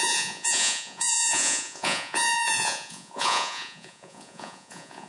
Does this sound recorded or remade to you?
remade